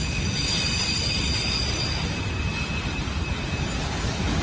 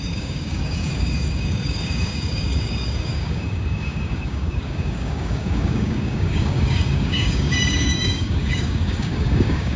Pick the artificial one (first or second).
second